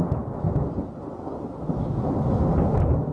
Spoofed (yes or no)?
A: no